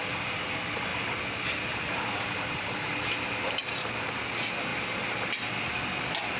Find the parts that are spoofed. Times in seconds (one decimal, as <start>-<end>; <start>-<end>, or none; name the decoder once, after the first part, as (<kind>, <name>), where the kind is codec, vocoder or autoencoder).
none